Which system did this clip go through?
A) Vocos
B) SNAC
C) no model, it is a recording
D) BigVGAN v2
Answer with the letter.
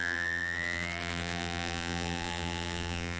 D